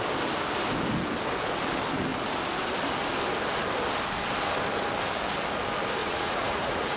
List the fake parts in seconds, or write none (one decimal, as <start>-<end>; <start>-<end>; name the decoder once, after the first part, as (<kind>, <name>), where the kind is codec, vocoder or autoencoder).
6.0-7.0 (vocoder, Vocos)